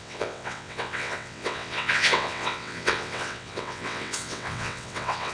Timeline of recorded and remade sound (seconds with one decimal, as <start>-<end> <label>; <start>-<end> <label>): 0.0-5.3 remade